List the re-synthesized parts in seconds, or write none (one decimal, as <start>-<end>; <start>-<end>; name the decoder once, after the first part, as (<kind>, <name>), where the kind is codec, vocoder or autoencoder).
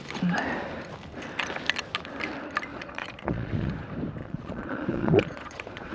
2.7-3.7 (vocoder, Vocos); 4.2-5.9